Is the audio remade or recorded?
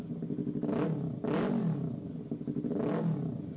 recorded